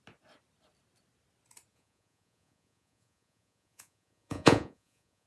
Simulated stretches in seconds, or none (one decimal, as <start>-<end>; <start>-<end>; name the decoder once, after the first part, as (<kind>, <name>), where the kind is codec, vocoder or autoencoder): 1.7-5.3 (vocoder, Vocos)